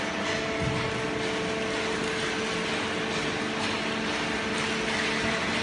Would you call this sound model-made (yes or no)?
no